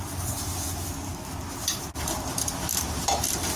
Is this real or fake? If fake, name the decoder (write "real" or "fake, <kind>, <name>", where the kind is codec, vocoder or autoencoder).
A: real